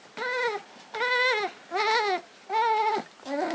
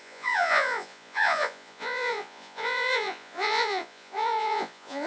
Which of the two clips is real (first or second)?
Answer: first